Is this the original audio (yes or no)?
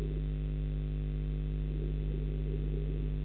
yes